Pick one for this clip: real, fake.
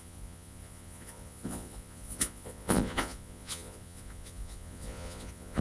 fake